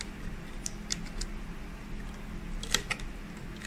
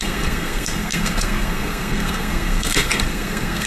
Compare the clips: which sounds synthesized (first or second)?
second